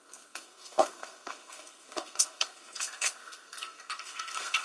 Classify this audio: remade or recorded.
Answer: remade